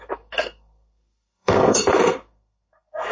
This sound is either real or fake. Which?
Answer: fake